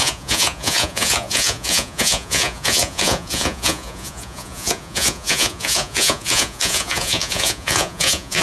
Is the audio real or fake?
fake